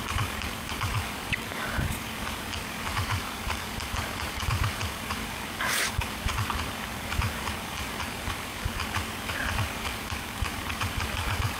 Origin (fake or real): fake